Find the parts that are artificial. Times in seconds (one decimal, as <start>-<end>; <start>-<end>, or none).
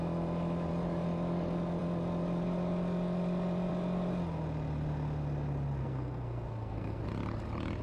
5.8-7.0